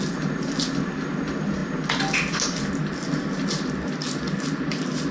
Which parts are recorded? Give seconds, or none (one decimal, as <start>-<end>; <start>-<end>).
0.0-5.1